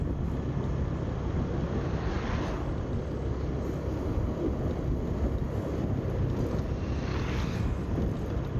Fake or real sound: real